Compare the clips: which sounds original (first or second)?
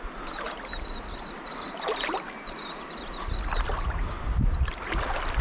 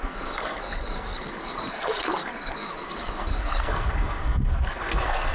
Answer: first